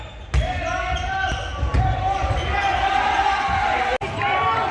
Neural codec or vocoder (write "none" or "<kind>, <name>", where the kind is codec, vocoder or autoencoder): none